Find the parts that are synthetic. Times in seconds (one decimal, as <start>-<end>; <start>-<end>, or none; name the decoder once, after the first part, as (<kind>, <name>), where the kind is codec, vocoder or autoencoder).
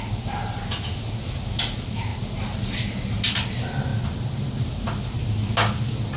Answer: none